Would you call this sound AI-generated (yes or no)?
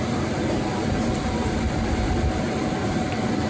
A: yes